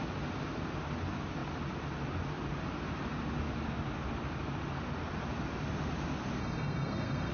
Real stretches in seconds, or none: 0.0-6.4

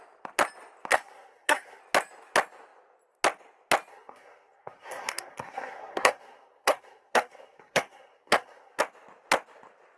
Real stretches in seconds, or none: 0.0-0.9; 1.8-3.9; 8.8-10.0

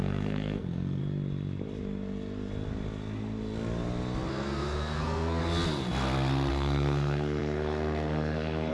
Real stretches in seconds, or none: 1.0-4.3; 5.4-6.5